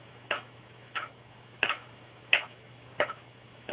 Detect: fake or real fake